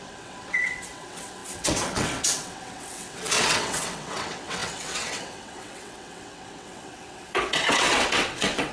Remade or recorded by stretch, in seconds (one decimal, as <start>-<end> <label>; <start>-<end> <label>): 0.0-8.7 remade